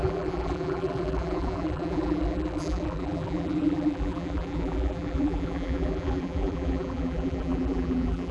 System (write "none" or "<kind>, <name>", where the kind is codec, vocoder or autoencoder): vocoder, BigVGAN v2